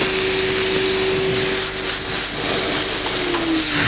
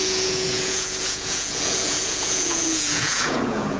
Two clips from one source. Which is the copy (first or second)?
second